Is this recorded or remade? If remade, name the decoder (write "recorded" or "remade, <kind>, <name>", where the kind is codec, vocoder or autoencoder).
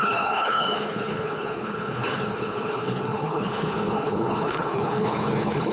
remade, codec, HILCodec